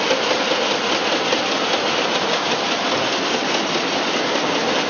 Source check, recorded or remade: remade